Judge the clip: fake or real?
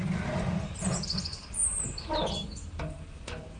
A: real